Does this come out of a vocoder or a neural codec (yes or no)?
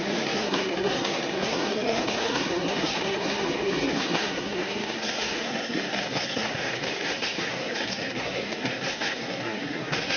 yes